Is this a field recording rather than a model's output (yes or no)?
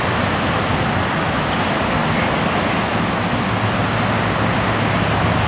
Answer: yes